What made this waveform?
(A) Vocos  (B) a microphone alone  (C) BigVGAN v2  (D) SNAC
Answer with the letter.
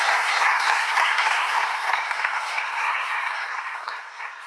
D